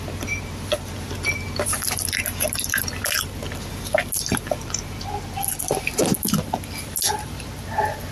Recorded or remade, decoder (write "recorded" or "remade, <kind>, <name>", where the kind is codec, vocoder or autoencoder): recorded